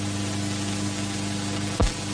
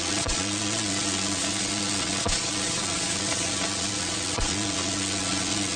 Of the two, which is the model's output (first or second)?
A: second